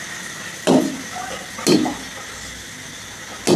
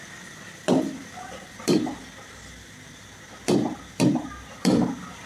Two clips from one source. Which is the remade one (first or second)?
second